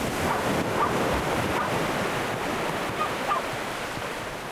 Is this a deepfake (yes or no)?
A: no